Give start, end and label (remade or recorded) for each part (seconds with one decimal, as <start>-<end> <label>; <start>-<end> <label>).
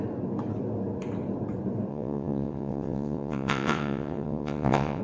0.0-1.9 recorded; 1.9-5.0 remade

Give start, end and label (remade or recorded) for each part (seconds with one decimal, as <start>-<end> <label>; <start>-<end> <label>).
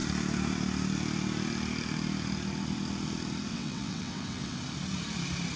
0.0-3.5 recorded; 3.5-4.6 remade; 4.6-5.6 recorded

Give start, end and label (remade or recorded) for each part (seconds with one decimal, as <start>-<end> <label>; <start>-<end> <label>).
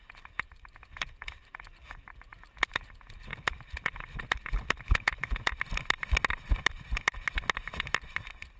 0.0-8.6 recorded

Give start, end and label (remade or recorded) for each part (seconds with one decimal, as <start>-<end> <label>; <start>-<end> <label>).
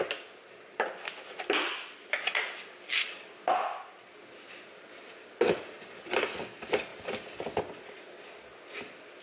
0.0-9.2 recorded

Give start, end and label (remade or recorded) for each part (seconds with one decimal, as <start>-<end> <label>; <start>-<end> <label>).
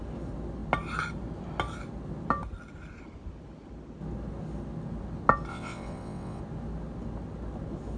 0.0-5.5 recorded; 5.5-6.4 remade; 6.4-8.0 recorded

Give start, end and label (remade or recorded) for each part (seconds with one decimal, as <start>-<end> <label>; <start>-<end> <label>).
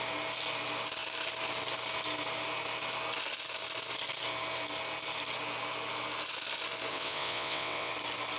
0.0-6.9 recorded; 6.9-7.9 remade; 7.9-8.4 recorded